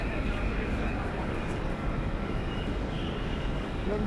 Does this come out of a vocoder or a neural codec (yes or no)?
yes